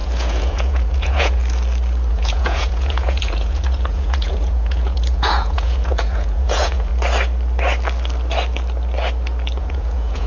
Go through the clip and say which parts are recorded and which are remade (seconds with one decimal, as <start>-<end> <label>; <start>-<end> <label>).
0.0-1.4 remade; 1.4-2.1 recorded; 2.1-6.9 remade; 6.9-9.6 recorded; 9.6-10.3 remade